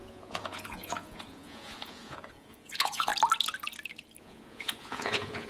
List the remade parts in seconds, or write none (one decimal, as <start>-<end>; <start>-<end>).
0.0-3.1; 4.2-5.5